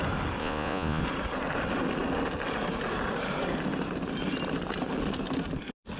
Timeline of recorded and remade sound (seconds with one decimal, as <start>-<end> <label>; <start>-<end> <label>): 0.0-0.4 recorded; 0.4-1.0 remade; 1.0-6.0 recorded